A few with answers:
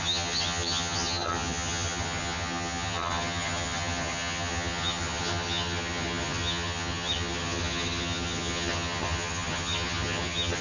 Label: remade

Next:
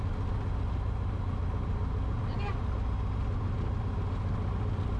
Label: recorded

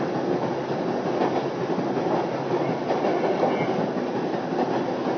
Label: recorded